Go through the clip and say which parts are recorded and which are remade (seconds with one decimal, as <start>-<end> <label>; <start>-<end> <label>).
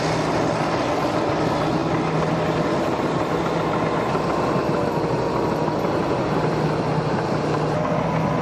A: 0.0-8.4 recorded